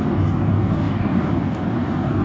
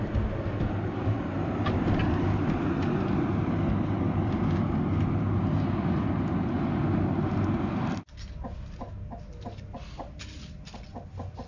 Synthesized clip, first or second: first